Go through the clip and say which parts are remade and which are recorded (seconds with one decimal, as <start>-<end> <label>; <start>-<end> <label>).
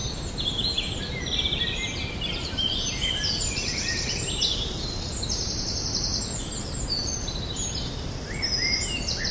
0.0-9.3 recorded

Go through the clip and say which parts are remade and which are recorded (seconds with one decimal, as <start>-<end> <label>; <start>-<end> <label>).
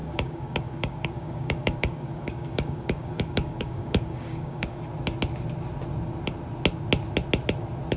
0.0-4.8 remade; 4.8-8.0 recorded